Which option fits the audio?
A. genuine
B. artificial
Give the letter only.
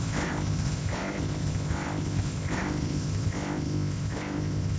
B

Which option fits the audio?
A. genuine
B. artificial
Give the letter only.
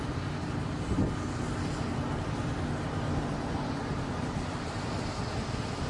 A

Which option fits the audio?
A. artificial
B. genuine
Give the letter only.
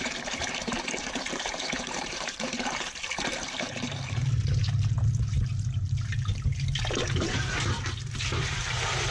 A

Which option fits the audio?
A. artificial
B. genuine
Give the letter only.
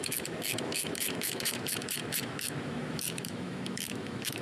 A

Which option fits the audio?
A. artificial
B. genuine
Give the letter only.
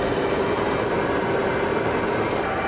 B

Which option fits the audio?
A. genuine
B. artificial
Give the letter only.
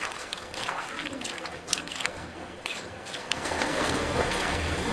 B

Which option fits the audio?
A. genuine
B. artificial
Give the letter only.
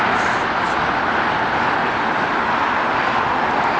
A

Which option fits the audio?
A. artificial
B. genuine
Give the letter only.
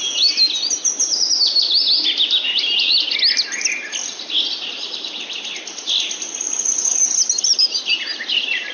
B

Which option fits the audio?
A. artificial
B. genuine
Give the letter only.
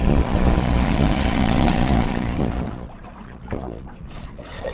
A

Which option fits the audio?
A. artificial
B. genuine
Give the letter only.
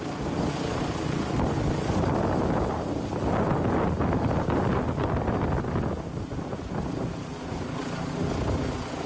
B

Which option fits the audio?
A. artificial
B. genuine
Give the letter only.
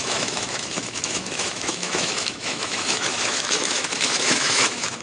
A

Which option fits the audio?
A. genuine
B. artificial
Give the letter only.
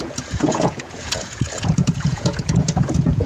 B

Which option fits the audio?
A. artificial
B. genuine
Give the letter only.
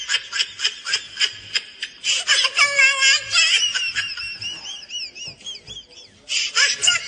B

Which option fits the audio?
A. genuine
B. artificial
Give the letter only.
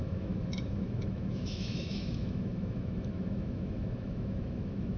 B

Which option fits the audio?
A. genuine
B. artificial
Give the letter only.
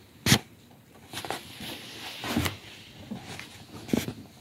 A